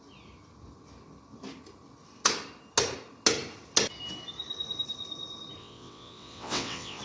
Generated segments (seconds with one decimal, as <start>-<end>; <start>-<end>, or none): 5.6-7.0